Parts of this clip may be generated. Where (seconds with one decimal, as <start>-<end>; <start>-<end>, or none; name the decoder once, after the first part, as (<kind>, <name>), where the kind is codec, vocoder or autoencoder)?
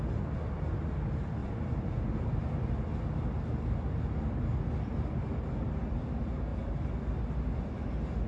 1.4-2.7 (vocoder, BigVGAN v2)